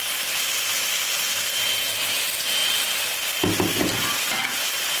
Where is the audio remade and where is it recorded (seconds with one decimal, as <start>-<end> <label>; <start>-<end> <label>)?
0.0-5.0 recorded